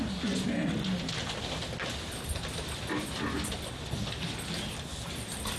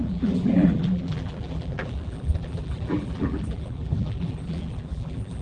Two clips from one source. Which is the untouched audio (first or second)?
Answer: first